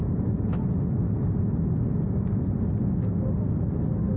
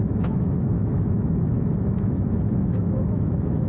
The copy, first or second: second